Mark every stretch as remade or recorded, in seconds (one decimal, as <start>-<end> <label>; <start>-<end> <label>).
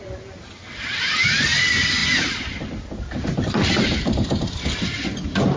0.0-5.6 recorded